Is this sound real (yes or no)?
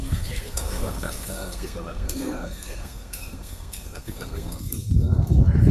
no